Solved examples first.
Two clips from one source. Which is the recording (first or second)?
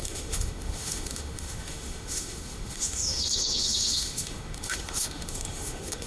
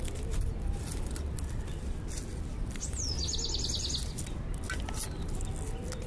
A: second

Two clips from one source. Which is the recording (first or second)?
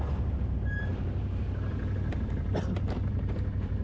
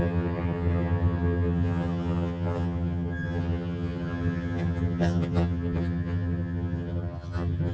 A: first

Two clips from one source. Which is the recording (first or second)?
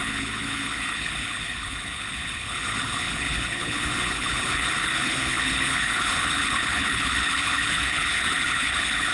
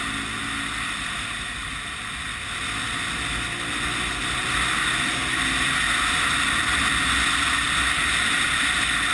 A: second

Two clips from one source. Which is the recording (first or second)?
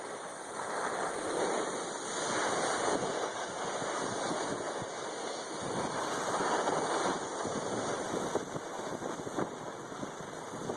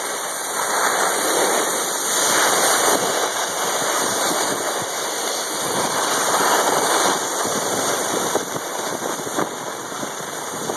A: first